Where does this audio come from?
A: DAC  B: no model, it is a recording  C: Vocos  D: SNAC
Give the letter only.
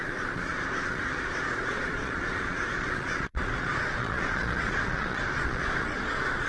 C